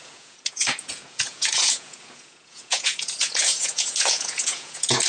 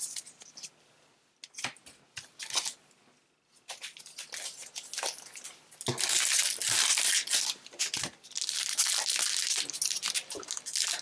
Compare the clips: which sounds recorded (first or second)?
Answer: second